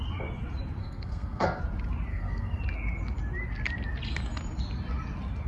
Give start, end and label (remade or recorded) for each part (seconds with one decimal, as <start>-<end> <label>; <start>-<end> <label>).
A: 0.0-0.8 recorded; 0.8-1.6 remade; 1.6-2.1 recorded; 2.1-2.6 remade; 2.6-5.5 recorded